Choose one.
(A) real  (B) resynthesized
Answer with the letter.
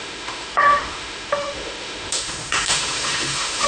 B